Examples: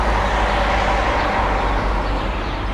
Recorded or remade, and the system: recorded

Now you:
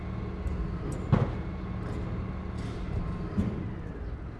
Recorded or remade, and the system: recorded